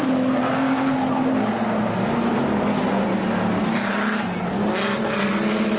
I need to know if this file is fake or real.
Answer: real